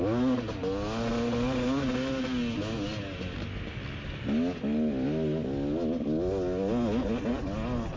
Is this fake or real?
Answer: real